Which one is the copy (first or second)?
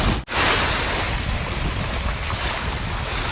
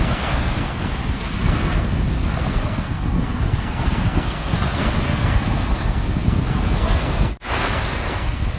second